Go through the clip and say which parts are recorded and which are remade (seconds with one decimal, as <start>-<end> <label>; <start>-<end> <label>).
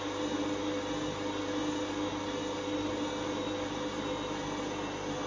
0.0-5.3 recorded